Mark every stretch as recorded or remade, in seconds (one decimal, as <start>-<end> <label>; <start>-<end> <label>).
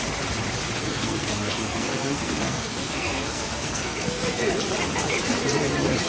0.0-0.8 recorded; 0.8-4.5 remade; 4.5-6.1 recorded